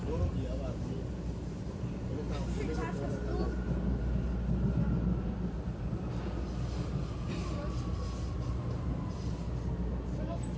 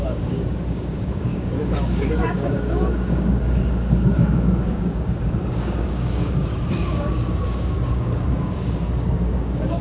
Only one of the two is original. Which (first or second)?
first